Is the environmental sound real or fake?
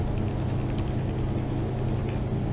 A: real